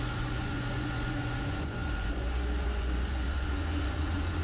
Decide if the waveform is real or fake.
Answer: fake